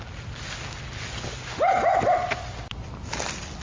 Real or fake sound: real